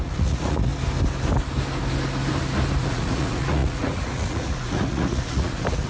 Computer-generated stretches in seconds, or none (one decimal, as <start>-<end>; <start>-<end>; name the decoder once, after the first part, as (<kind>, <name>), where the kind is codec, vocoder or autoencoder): 0.0-0.7 (vocoder, Vocos); 2.8-5.9